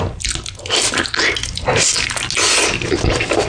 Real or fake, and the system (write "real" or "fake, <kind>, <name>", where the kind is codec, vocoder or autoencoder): real